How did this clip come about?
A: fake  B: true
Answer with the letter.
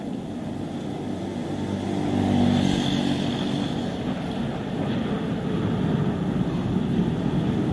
B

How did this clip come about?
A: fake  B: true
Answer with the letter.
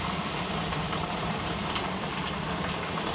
A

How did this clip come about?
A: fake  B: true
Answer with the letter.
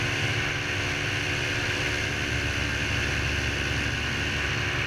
B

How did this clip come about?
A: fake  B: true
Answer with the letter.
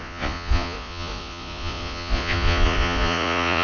A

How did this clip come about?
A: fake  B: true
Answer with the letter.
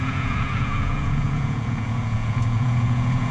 A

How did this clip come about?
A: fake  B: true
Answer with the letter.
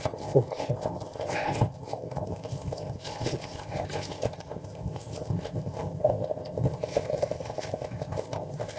A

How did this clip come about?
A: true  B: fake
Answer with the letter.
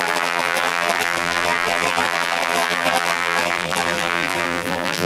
B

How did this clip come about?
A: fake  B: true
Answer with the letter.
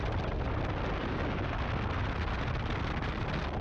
B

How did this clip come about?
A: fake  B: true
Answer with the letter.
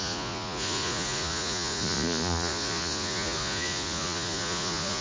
A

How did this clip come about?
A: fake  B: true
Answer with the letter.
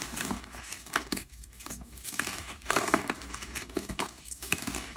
A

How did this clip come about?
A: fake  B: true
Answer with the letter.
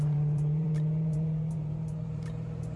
A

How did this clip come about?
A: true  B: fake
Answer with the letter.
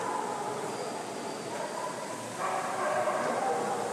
A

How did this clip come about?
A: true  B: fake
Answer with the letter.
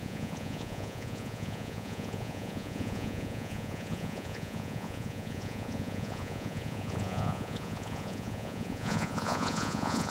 B